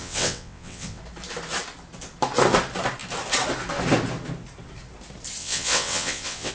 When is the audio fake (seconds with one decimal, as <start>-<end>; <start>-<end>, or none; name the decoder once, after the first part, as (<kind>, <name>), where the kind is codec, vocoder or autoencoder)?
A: 0.0-1.0 (vocoder, WaveNeXt); 5.4-6.5